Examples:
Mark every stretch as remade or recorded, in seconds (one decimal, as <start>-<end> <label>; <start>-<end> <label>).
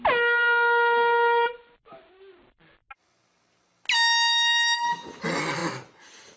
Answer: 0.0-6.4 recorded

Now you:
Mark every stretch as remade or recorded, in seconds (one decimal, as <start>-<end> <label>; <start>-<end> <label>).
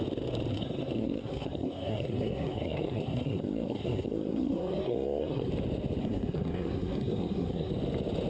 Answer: 0.0-0.5 recorded; 0.5-5.5 remade; 5.5-6.0 recorded; 6.0-7.7 remade; 7.7-8.3 recorded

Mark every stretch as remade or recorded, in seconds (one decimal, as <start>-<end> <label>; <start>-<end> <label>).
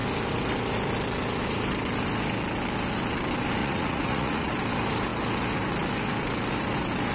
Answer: 0.0-3.6 recorded; 3.6-4.5 remade; 4.5-7.1 recorded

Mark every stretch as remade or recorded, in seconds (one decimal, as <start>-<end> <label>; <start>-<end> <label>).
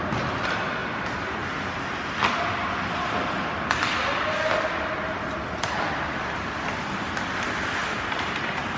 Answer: 0.0-7.8 recorded; 7.8-8.8 remade